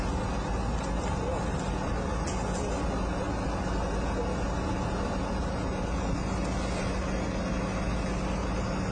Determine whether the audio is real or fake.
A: real